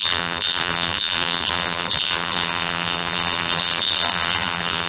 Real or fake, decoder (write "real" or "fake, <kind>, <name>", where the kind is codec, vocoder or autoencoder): fake, vocoder, BigVGAN v2